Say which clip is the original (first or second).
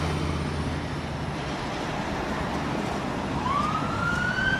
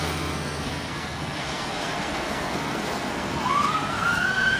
first